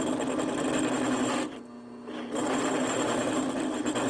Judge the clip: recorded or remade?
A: recorded